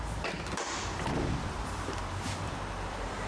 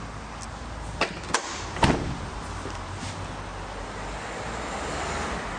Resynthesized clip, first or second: first